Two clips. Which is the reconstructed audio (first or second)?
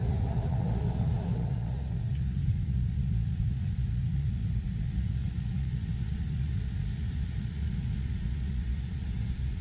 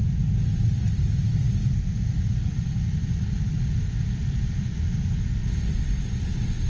first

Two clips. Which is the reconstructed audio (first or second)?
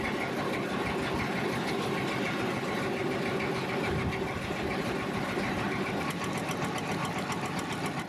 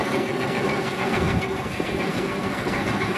second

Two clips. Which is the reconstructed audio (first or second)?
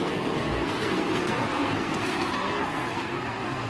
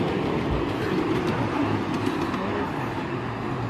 first